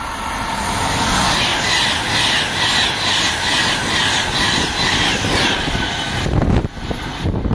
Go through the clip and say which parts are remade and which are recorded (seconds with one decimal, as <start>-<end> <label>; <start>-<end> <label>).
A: 0.0-7.5 recorded